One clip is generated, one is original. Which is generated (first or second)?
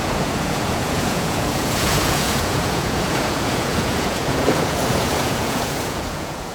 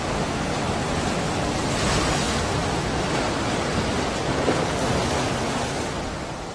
first